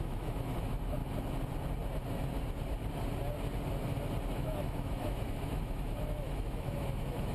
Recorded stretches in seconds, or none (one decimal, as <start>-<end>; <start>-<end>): 1.0-4.3